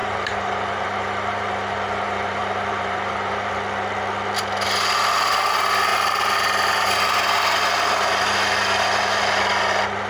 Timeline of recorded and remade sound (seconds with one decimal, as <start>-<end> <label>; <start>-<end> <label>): 0.0-3.5 remade; 3.5-10.1 recorded